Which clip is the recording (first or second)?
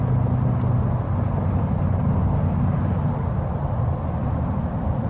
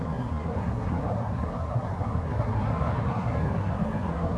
first